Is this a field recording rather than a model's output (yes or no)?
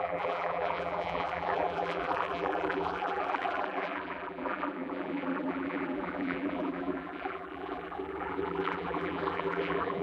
no